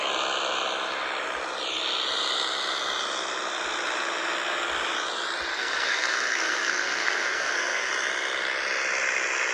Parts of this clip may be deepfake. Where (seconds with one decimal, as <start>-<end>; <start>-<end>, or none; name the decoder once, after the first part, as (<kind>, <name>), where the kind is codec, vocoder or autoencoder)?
5.5-7.9 (codec, SNAC)